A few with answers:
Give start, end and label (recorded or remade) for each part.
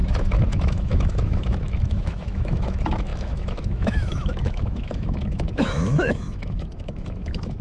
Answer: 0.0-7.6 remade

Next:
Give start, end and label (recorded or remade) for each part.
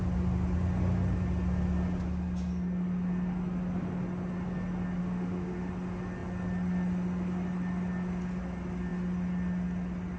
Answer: 0.0-5.0 recorded; 5.0-5.7 remade; 5.7-10.2 recorded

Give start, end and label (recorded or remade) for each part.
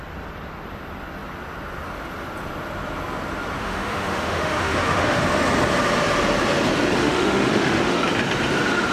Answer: 0.0-3.6 recorded; 3.6-5.2 remade; 5.2-7.0 recorded; 7.0-8.0 remade; 8.0-8.9 recorded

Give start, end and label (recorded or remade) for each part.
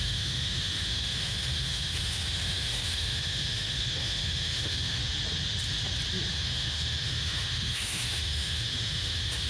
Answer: 0.0-5.0 remade; 5.0-6.3 recorded; 6.3-9.5 remade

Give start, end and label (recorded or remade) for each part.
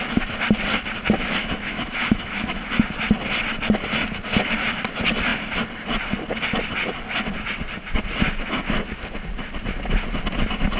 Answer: 0.0-1.4 recorded; 1.4-2.6 remade; 2.6-10.8 recorded